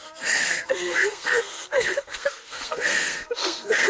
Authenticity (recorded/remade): remade